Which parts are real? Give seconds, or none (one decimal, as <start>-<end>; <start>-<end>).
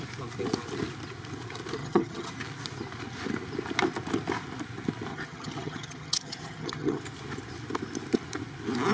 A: 0.0-1.8; 2.3-5.1; 7.0-8.9